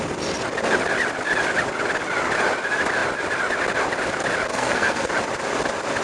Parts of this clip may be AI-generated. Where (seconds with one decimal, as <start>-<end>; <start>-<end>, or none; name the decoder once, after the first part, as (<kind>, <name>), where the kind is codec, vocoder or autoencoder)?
4.5-5.1 (codec, SNAC)